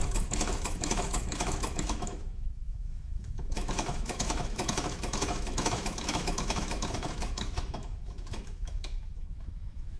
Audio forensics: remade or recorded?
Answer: remade